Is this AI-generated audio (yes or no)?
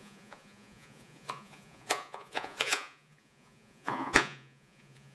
yes